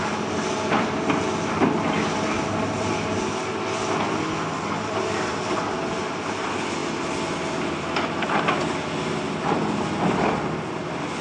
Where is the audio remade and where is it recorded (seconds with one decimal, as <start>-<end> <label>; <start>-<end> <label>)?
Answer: 0.0-11.2 recorded